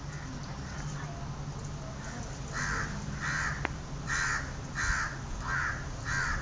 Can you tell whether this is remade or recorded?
recorded